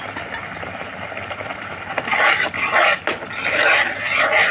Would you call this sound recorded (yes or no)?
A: yes